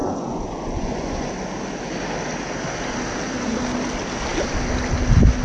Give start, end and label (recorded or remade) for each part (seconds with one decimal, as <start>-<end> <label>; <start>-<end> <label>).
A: 0.0-1.3 remade; 1.3-5.4 recorded